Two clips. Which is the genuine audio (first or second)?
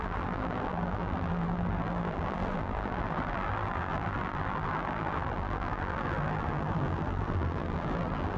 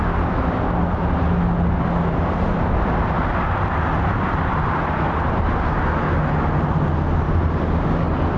second